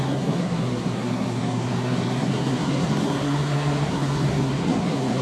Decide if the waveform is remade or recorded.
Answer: remade